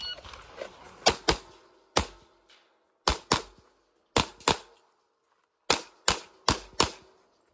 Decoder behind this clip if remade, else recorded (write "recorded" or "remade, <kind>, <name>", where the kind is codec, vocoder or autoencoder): recorded